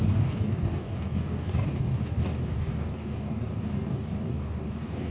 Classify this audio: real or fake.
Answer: fake